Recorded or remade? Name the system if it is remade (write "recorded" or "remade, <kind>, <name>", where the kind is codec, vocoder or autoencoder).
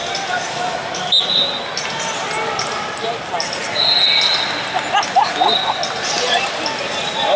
recorded